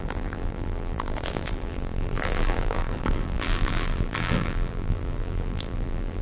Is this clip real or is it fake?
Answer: fake